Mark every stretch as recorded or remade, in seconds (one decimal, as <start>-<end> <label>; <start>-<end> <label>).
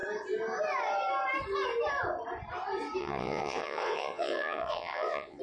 0.0-3.0 recorded; 3.0-5.4 remade